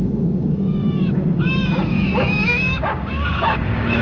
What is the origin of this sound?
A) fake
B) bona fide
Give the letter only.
A